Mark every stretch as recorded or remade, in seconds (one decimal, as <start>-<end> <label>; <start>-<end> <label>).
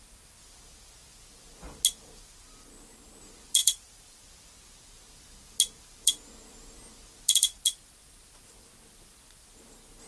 0.0-3.6 recorded; 3.6-4.2 remade; 4.2-10.1 recorded